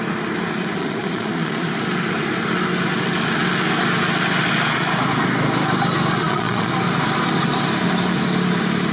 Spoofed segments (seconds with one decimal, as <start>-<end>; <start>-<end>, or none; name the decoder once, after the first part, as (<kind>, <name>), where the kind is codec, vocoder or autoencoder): 0.8-1.7 (vocoder, Vocos); 6.2-6.7

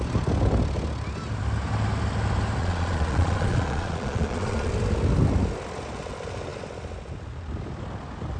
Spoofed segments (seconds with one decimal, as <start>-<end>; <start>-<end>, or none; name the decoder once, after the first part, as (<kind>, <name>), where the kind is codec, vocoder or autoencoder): 2.6-4.7 (vocoder, Vocos)

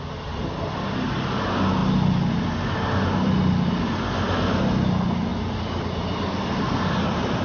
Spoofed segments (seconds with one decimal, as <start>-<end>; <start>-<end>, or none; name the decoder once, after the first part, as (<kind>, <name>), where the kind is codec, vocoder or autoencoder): none

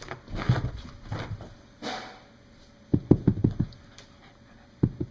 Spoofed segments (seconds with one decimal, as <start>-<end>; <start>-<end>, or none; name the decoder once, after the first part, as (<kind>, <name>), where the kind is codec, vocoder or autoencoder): none